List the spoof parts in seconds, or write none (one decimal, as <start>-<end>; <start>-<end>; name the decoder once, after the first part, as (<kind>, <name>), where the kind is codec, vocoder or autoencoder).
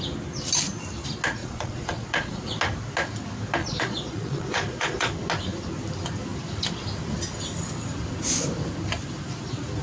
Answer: 1.4-2.4 (vocoder, Vocos); 3.6-5.1